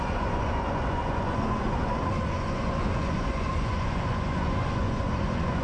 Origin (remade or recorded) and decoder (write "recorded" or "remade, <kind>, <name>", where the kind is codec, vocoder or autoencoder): remade, vocoder, Vocos